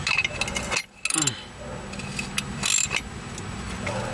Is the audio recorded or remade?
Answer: recorded